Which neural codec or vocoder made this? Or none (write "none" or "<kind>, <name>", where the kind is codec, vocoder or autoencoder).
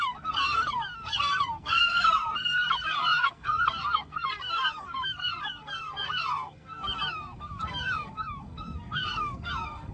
codec, SNAC